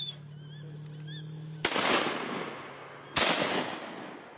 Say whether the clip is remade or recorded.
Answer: recorded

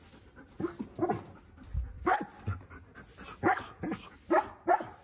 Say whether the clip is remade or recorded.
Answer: recorded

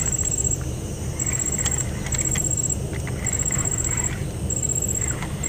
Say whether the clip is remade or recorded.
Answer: recorded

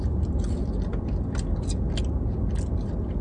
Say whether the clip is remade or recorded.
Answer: recorded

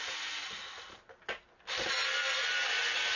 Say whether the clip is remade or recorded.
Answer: recorded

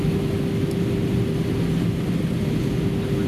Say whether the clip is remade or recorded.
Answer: recorded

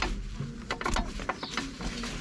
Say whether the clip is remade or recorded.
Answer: recorded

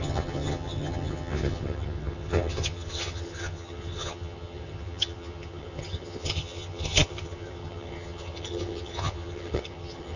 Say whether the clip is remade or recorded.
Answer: remade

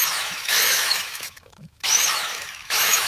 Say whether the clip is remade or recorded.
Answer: remade